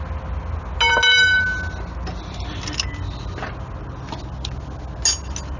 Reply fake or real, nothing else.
real